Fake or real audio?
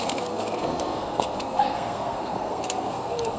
fake